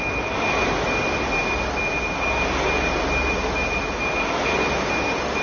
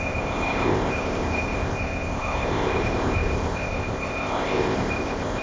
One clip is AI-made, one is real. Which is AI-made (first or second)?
second